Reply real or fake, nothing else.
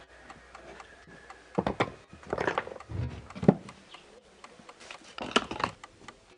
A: real